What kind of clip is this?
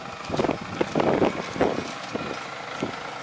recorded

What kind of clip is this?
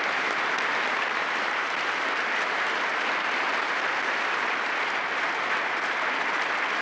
remade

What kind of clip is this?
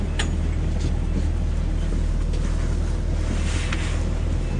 recorded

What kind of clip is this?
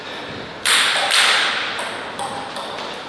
recorded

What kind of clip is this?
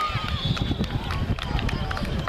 recorded